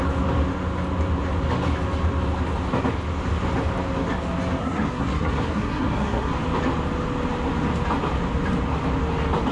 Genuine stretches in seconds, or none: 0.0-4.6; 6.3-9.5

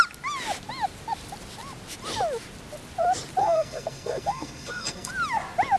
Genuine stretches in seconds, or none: 0.0-3.4; 5.1-5.8

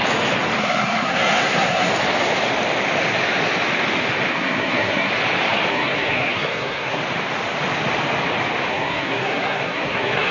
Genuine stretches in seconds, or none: 0.0-0.6; 1.9-4.3; 5.1-5.7; 7.0-8.7

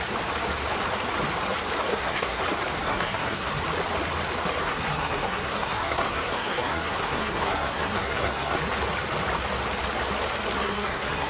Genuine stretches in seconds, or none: 0.0-1.9; 2.4-2.8; 3.6-4.6; 8.6-10.6

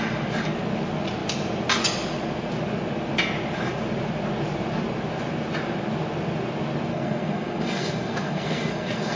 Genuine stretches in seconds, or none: 0.0-6.9

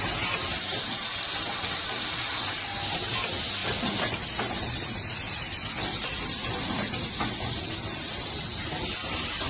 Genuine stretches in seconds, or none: 0.0-9.5